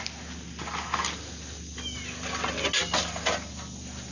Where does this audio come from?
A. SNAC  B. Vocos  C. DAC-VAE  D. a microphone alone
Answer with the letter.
D